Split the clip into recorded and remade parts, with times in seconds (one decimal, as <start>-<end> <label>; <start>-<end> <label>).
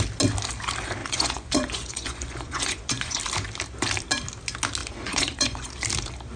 0.0-1.0 recorded; 1.0-3.2 remade; 3.2-4.8 recorded; 4.8-5.7 remade; 5.7-6.4 recorded